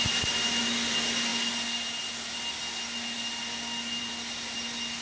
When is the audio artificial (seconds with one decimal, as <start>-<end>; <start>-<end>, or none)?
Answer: none